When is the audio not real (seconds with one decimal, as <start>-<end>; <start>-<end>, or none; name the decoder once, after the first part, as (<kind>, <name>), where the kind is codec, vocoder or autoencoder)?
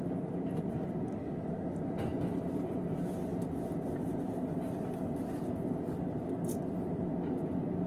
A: none